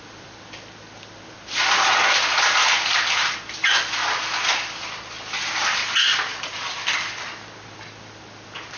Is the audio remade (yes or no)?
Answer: no